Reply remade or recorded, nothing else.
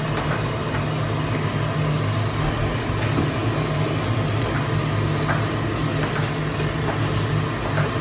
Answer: recorded